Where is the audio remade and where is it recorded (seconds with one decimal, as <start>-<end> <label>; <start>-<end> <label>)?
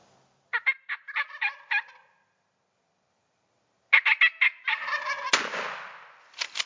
0.0-6.7 recorded